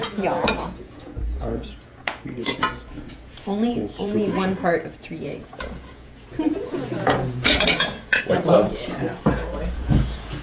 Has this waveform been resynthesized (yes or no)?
yes